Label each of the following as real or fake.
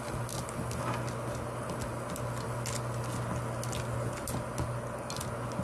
real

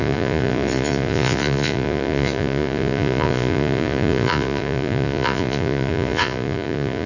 fake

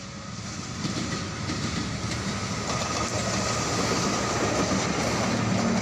real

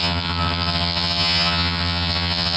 fake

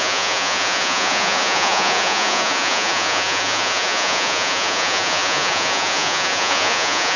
fake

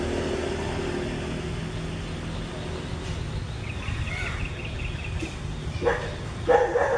real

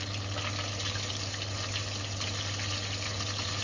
real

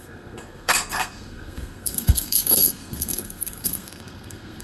fake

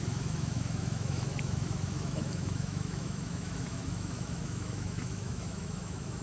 fake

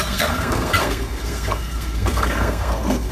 fake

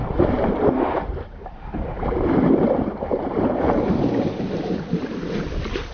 fake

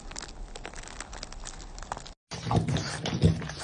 real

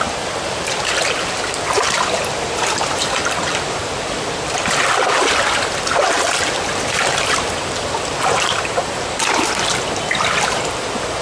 fake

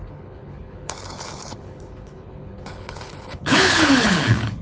fake